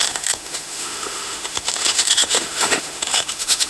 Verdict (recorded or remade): remade